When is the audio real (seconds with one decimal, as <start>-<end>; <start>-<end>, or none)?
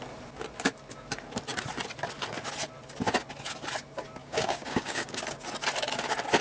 0.0-4.2; 5.2-6.4